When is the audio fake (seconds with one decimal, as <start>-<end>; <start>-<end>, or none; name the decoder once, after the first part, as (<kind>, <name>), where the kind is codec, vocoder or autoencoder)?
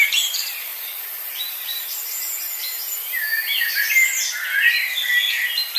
0.0-2.8 (vocoder, BigVGAN v2); 5.3-5.8